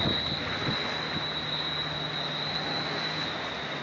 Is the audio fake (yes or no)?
no